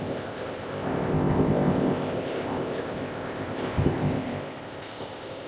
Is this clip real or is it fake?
fake